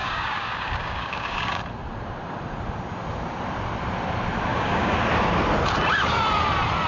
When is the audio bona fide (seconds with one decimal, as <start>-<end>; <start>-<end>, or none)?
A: 1.6-4.5; 5.0-6.9